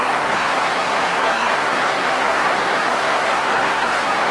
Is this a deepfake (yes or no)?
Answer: yes